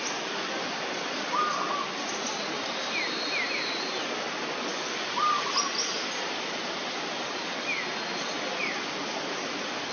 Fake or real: real